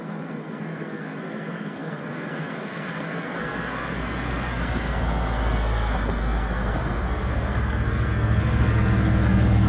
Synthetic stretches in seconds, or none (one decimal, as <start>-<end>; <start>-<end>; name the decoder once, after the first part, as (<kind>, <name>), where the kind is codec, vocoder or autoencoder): 0.0-9.7 (codec, SNAC)